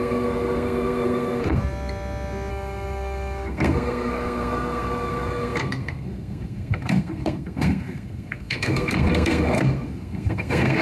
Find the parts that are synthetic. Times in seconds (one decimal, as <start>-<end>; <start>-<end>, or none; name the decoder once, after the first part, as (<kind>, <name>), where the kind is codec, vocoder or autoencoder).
0.0-1.6 (codec, SNAC); 2.5-10.8